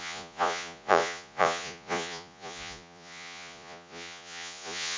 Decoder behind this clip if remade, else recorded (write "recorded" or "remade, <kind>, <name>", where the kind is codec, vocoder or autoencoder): remade, vocoder, Vocos